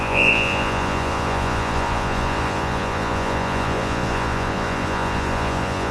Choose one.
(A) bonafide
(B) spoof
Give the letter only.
B